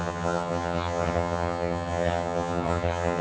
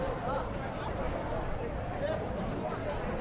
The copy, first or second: first